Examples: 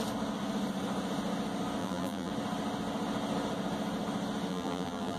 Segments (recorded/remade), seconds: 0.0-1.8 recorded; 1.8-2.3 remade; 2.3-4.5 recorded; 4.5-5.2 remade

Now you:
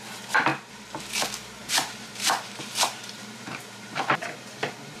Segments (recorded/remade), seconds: 0.0-0.5 recorded; 0.5-1.0 remade; 1.0-1.6 recorded; 1.6-4.1 remade; 4.1-5.0 recorded

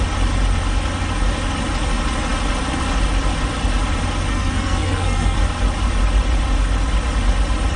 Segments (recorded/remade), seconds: 0.0-4.3 recorded; 4.3-5.4 remade; 5.4-7.8 recorded

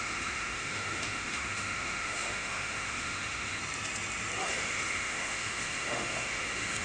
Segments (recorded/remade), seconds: 0.0-3.6 remade; 3.6-4.4 recorded; 4.4-6.8 remade